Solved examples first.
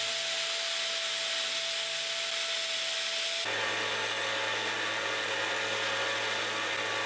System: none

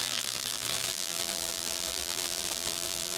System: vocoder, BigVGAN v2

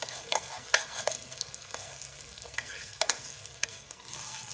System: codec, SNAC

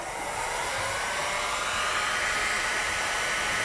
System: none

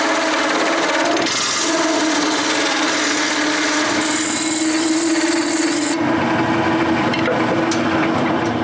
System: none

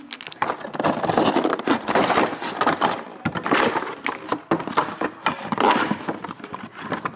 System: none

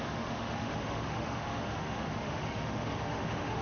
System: autoencoder, DAC-VAE